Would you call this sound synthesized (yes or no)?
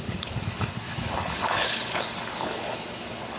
yes